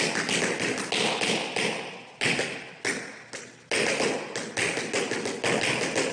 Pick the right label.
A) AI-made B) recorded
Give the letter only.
B